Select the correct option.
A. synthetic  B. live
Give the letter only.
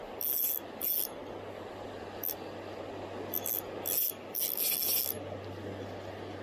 B